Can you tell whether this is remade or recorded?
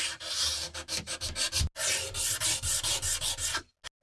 recorded